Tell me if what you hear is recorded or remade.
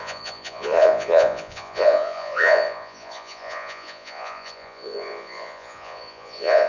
remade